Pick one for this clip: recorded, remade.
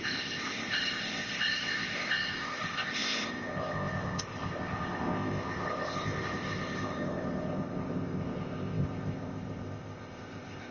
remade